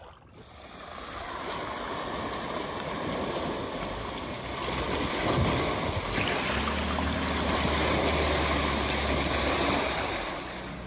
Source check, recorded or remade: recorded